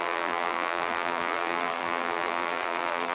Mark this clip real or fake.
fake